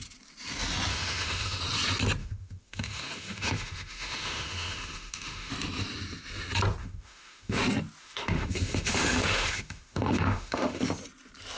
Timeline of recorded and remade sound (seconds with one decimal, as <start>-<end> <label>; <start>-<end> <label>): 0.0-0.9 recorded; 0.9-1.6 remade; 1.6-2.2 recorded; 2.2-5.5 remade; 5.5-6.8 recorded; 6.8-7.6 remade; 7.6-8.0 recorded; 8.0-10.8 remade; 10.8-11.6 recorded